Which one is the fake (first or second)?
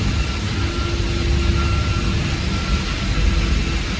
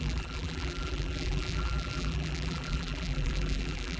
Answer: second